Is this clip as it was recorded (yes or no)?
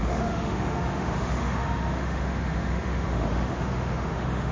no